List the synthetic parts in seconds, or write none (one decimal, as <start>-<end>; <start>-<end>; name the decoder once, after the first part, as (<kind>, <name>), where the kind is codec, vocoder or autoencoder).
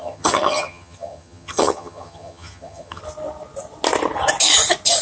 0.0-3.0 (vocoder, HiFi-GAN)